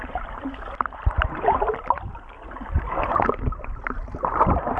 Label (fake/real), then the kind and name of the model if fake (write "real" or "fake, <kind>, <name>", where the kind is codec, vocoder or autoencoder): real